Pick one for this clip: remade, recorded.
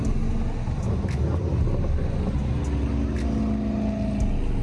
recorded